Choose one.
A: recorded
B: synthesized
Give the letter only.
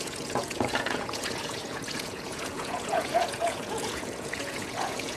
B